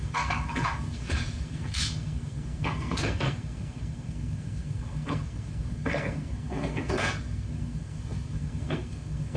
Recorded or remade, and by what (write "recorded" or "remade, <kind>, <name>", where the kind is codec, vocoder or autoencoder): remade, codec, SNAC